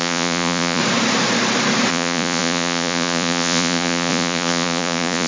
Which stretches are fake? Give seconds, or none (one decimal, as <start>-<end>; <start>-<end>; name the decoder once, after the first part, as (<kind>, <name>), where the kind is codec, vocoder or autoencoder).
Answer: 0.0-0.8 (vocoder, Vocos); 1.9-5.3